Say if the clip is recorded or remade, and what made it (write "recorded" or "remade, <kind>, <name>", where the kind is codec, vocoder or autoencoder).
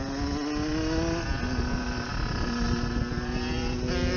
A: recorded